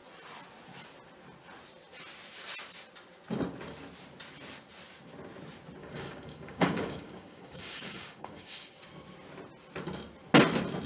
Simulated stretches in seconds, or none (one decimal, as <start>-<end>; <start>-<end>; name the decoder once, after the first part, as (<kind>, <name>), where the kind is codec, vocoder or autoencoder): 5.8-8.8 (codec, DAC)